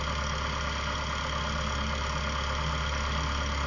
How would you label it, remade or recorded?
recorded